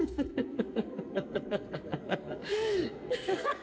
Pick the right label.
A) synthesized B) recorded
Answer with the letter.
A